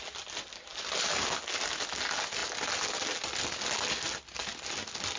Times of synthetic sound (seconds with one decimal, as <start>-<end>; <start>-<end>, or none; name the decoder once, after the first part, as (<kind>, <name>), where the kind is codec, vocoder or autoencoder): none